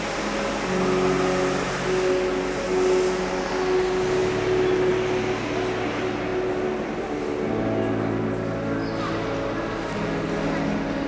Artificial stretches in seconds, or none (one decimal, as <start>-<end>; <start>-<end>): none